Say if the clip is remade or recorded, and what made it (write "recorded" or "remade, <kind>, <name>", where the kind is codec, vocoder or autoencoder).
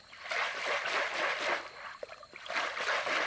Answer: recorded